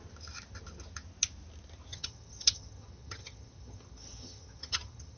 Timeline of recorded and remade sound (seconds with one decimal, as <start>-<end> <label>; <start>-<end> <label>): 0.0-1.9 recorded; 1.9-5.2 remade